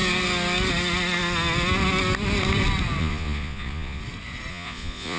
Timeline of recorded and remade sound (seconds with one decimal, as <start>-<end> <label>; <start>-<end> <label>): 0.0-3.0 recorded; 3.0-4.0 remade; 4.0-4.5 recorded; 4.5-5.2 remade